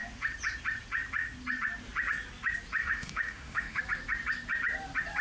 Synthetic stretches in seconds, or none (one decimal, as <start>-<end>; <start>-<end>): 2.8-3.8